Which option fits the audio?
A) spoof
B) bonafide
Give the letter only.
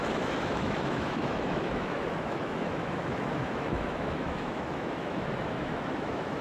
A